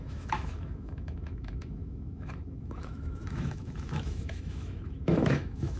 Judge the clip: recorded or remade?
remade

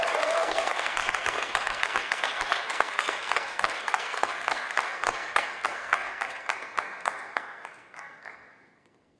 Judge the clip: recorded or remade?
remade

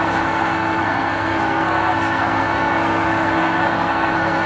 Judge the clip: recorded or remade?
remade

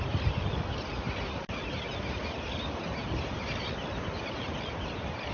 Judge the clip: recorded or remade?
recorded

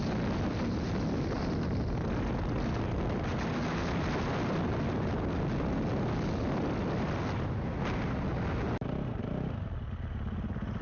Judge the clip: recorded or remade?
recorded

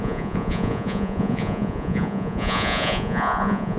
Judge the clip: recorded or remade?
remade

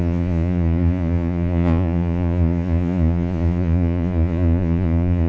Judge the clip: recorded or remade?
remade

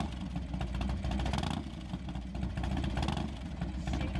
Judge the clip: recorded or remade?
recorded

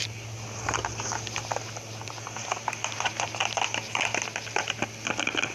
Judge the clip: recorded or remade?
recorded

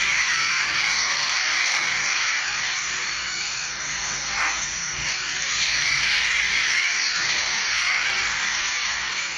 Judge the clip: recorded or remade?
remade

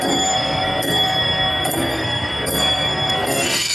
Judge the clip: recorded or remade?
remade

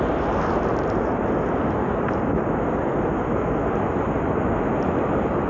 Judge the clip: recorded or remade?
recorded